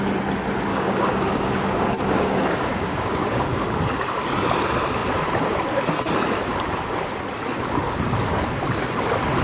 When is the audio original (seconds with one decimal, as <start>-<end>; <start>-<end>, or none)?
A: 0.0-0.7; 3.8-9.4